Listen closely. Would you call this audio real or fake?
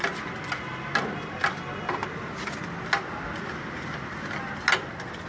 real